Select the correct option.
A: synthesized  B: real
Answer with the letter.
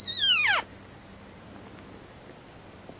B